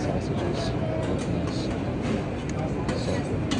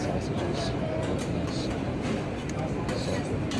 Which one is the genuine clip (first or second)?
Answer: first